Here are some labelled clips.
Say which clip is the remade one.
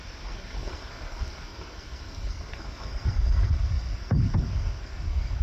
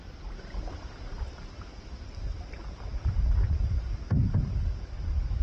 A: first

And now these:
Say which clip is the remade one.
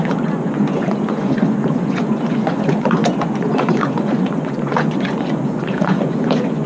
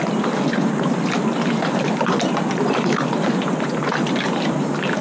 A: first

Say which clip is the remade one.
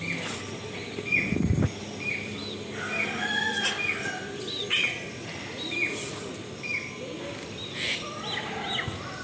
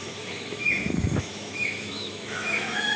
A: second